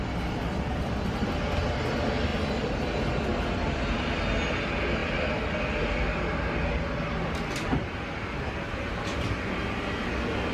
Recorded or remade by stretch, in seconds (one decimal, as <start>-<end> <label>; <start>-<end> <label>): 0.0-10.5 recorded